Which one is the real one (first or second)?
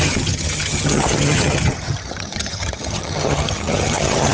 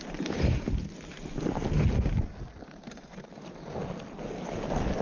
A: second